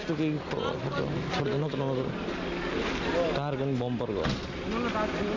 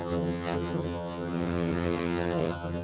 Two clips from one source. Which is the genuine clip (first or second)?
first